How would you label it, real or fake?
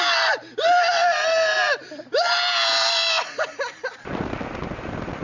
real